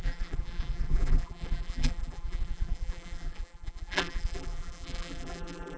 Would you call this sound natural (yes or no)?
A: no